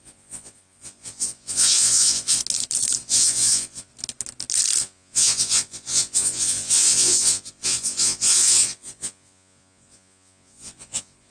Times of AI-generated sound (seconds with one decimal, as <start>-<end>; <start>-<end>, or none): 0.0-2.4; 3.0-3.9; 4.8-11.3

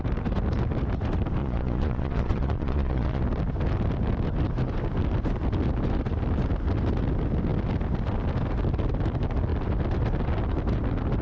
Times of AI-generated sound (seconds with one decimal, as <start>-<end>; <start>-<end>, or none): 1.4-3.2

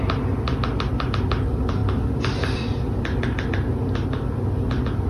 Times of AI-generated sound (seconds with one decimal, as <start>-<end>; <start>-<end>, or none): none

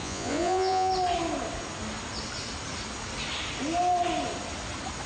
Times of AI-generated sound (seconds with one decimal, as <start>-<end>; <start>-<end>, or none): 0.0-0.9

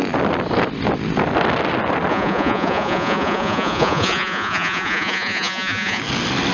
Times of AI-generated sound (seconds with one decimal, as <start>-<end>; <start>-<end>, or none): 2.1-6.0

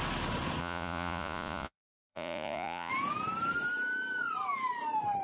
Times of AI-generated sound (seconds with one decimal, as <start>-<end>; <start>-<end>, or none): 0.6-2.9